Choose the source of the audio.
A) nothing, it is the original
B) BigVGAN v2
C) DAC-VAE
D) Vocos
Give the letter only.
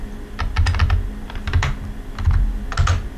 A